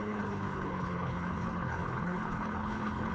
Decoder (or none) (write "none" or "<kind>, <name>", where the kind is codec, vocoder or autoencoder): codec, HILCodec